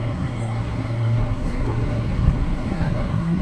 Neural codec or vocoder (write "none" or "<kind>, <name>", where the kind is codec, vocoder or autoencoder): codec, SNAC